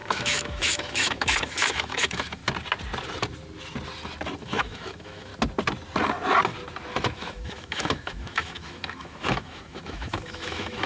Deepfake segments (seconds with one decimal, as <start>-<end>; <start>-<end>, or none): 0.0-2.4; 4.4-5.3; 7.1-10.9